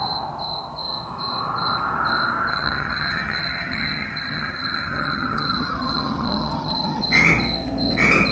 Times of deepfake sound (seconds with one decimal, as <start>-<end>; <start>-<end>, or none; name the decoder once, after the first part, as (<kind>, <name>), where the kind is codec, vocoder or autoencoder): 2.5-7.1 (vocoder, HiFi-GAN)